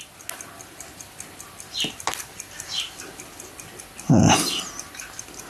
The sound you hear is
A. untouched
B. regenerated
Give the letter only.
A